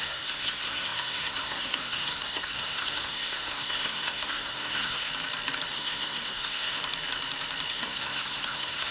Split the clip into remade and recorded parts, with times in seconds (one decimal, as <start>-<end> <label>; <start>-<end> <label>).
0.0-5.1 remade; 5.1-5.7 recorded; 5.7-6.8 remade; 6.8-7.7 recorded; 7.7-8.9 remade